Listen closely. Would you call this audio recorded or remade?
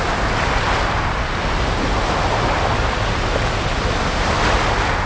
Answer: recorded